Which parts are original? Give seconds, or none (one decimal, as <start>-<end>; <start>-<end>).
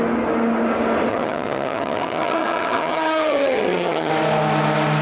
0.0-1.1; 4.1-5.0